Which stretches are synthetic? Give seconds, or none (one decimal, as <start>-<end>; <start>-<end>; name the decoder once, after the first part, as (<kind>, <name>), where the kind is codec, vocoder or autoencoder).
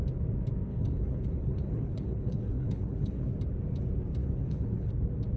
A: 0.7-3.3 (codec, HILCodec); 4.2-4.9